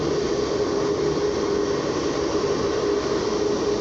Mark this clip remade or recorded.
recorded